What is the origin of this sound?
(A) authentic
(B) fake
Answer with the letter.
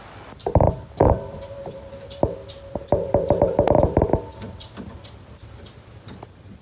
B